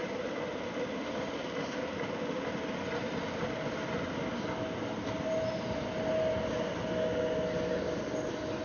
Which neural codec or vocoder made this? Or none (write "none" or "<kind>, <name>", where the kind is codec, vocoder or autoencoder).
none